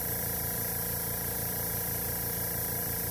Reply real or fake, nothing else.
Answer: fake